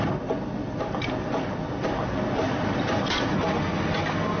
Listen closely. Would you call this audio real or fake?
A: real